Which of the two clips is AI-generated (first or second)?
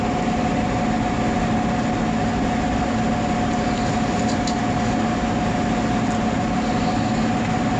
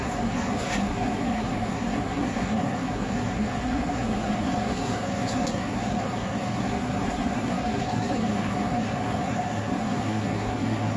second